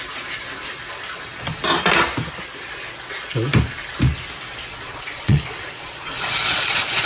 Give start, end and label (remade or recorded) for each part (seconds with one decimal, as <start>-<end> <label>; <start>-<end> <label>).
0.0-4.7 recorded; 4.7-7.1 remade